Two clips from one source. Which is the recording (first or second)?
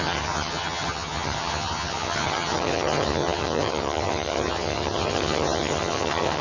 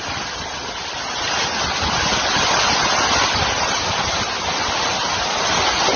second